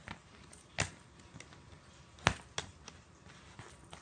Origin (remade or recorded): recorded